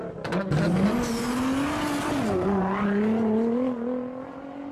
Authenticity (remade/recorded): recorded